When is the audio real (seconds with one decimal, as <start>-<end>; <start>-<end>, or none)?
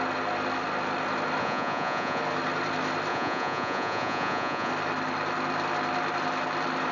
0.0-1.4; 2.2-3.1; 4.7-6.9